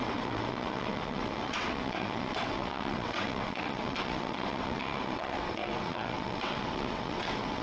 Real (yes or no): no